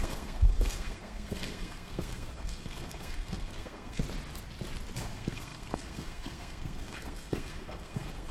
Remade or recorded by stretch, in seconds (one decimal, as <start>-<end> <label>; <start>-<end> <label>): 0.0-4.0 remade; 4.0-5.0 recorded; 5.0-8.3 remade